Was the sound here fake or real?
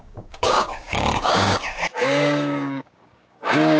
fake